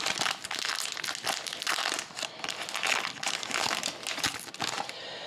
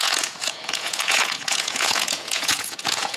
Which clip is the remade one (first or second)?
second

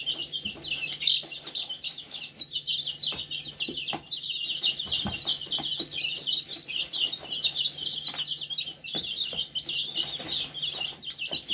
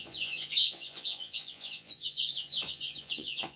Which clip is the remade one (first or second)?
second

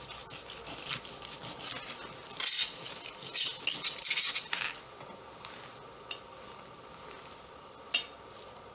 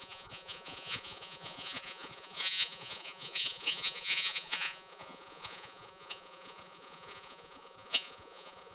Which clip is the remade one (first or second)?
second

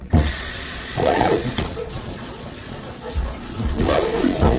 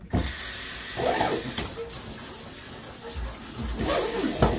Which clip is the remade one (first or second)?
first